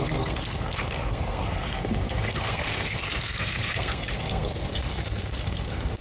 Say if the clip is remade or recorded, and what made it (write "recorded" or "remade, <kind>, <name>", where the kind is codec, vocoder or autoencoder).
remade, codec, SNAC